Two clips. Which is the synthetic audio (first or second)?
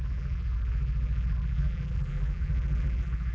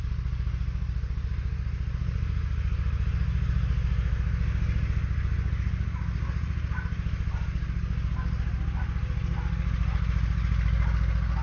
first